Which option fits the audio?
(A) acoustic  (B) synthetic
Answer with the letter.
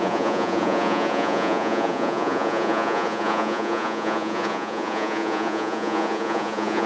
B